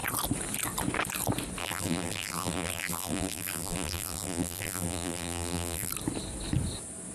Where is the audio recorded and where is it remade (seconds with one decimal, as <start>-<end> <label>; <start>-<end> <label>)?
0.0-1.6 recorded; 1.6-5.9 remade; 5.9-7.1 recorded